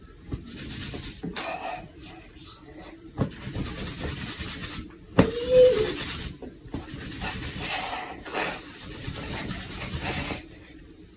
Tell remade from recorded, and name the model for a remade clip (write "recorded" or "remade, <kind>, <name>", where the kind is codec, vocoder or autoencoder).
remade, vocoder, BigVGAN v2